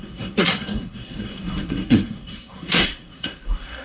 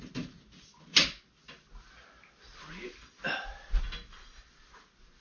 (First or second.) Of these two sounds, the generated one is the first